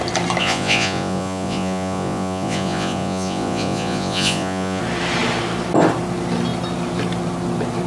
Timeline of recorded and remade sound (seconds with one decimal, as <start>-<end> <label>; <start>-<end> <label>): 0.0-0.4 recorded; 0.4-4.8 remade; 4.8-7.9 recorded